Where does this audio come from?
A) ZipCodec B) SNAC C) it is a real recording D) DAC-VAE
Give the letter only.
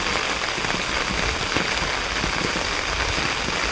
C